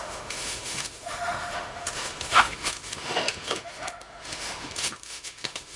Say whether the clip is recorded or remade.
remade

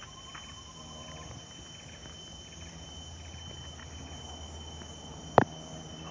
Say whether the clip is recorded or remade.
recorded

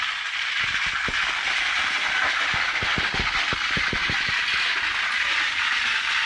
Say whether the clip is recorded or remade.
recorded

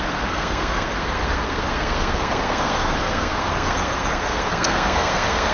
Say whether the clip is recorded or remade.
remade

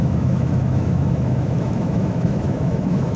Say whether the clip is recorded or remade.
remade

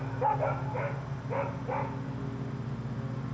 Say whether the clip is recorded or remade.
recorded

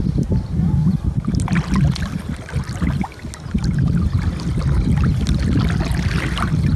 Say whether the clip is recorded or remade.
recorded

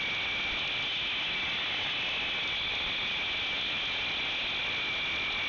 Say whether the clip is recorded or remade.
recorded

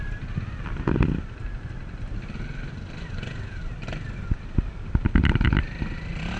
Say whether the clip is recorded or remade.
recorded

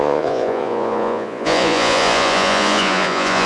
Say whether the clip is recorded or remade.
remade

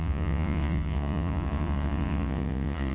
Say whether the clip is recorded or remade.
remade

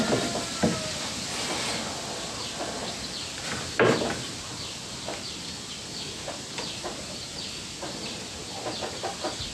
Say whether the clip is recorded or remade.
recorded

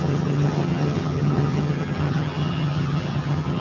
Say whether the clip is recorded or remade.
remade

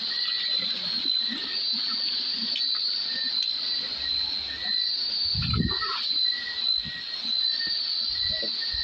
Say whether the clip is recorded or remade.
recorded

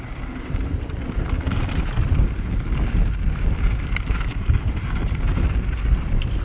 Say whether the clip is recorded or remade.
recorded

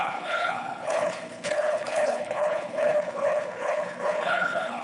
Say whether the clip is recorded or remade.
remade